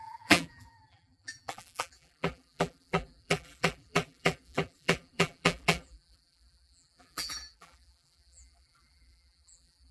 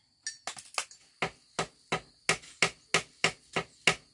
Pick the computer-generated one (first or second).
first